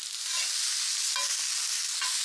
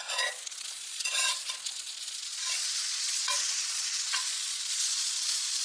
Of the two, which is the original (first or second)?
first